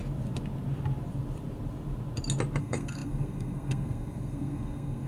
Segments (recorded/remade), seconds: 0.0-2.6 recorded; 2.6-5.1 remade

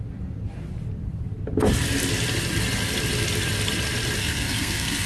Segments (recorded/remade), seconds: 0.0-4.2 recorded; 4.2-5.1 remade